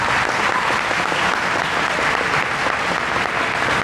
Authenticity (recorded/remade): recorded